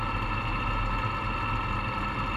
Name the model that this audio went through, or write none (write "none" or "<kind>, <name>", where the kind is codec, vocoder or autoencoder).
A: none